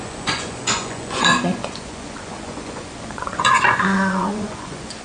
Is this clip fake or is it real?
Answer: fake